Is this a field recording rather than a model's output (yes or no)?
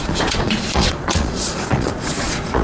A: no